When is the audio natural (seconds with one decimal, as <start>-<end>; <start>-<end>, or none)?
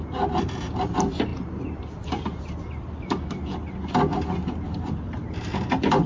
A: 0.0-6.1